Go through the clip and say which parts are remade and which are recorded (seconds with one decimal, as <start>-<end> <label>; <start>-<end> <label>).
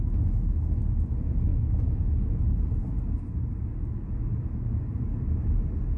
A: 0.0-6.0 recorded